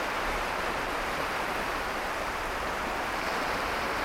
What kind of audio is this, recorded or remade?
remade